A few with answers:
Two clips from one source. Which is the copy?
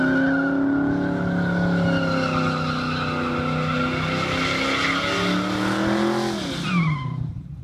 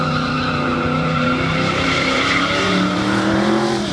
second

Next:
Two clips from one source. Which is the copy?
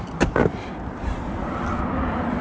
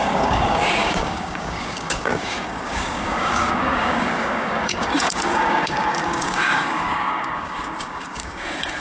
second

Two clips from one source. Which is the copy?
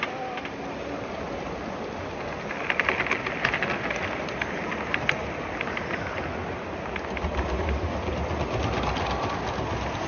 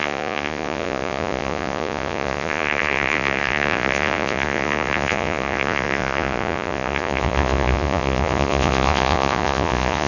second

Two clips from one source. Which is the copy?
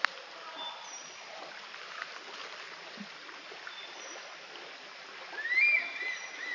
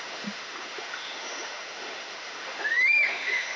second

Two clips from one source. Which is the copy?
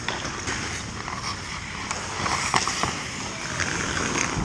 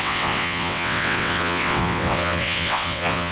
second